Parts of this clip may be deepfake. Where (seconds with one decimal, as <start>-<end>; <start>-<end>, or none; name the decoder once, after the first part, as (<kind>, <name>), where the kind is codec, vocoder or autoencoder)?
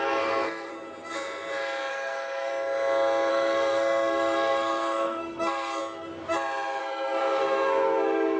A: 0.0-0.7 (codec, SNAC); 1.9-2.5; 3.3-5.8; 6.8-8.4